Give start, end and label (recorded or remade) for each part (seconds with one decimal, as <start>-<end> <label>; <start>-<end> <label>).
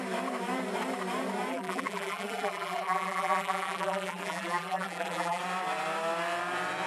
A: 0.0-1.5 recorded; 1.5-5.4 remade; 5.4-6.9 recorded